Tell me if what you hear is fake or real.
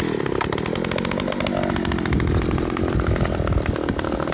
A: real